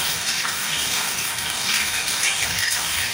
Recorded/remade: remade